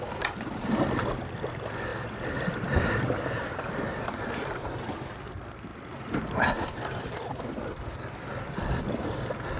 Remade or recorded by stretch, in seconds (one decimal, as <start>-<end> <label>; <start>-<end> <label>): 0.0-9.6 recorded